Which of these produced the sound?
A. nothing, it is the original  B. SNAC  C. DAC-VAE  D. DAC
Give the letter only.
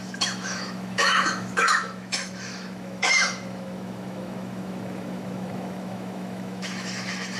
C